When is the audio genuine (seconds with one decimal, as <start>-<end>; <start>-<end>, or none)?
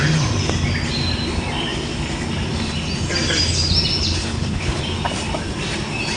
0.0-4.2; 4.8-6.2